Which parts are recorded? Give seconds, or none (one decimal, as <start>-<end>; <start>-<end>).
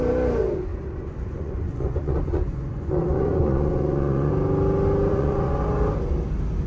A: 0.0-0.7; 4.3-5.1; 5.6-6.7